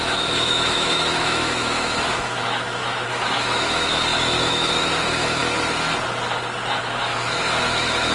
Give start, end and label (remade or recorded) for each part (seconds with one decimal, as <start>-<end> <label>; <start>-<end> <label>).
0.0-5.4 remade; 5.4-6.8 recorded; 6.8-8.1 remade